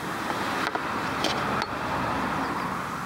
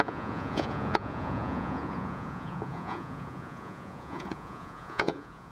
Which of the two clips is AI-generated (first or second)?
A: second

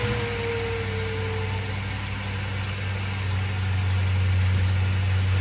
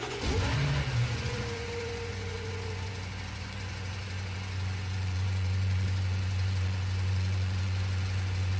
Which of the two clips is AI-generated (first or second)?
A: second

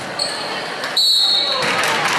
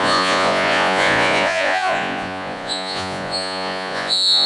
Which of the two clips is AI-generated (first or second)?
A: second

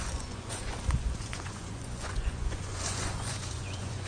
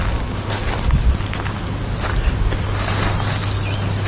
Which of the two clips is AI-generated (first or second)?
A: first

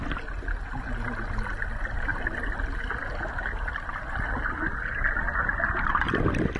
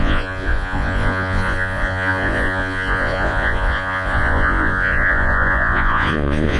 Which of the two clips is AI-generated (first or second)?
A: second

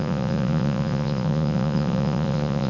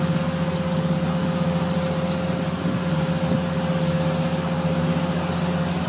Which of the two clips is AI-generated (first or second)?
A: first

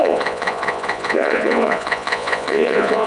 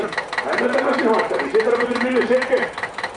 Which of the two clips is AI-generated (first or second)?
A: first